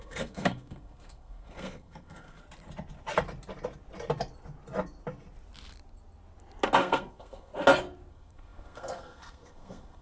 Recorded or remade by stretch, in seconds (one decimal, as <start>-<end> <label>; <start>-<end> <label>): 0.0-2.4 remade; 2.4-6.8 recorded; 6.8-7.5 remade; 7.5-8.1 recorded; 8.1-10.0 remade